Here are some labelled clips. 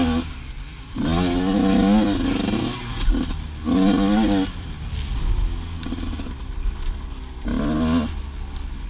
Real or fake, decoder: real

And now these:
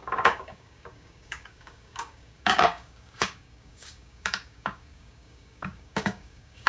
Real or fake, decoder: fake, codec, DAC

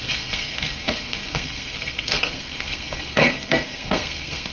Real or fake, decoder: fake, codec, SNAC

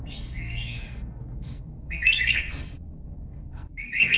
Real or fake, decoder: fake, codec, SNAC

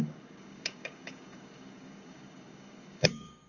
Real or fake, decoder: fake, codec, DAC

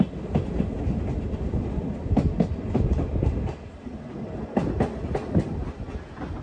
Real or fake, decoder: real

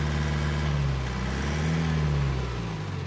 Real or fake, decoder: real